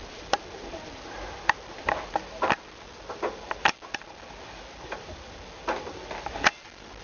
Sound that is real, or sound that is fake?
fake